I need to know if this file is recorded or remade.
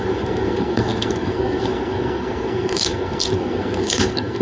remade